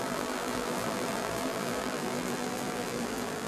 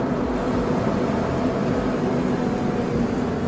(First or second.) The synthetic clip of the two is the first